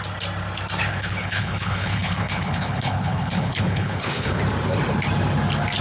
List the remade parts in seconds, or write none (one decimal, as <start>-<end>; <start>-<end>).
0.9-4.4